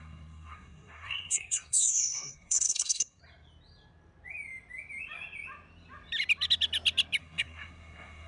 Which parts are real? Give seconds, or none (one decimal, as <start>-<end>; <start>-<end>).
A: 3.2-7.2